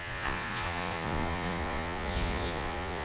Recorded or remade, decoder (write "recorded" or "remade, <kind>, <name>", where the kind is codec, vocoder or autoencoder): remade, vocoder, Vocos